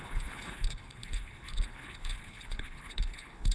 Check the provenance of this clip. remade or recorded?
remade